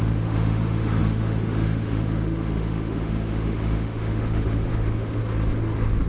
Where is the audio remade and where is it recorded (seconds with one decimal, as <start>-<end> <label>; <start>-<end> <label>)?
0.0-5.2 remade; 5.2-6.1 recorded